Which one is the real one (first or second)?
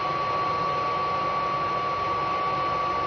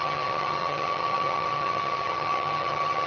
first